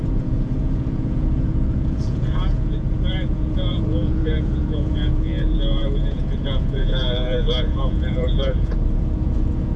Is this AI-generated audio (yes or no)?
yes